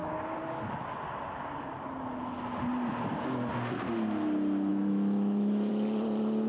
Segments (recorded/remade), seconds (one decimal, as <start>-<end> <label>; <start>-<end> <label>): 0.0-4.7 recorded; 4.7-5.7 remade; 5.7-6.5 recorded